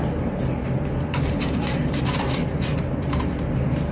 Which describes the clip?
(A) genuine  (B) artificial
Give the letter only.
A